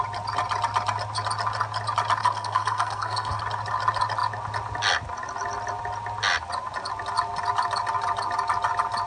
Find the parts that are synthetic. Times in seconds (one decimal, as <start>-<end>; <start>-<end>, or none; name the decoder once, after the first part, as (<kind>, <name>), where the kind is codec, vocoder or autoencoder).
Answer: 2.2-3.4 (codec, SNAC)